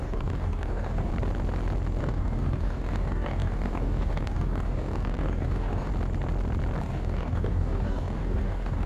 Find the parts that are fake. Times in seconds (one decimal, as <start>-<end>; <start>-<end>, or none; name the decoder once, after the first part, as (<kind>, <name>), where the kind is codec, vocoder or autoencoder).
0.0-1.1 (codec, DAC); 2.0-5.9; 6.8-8.9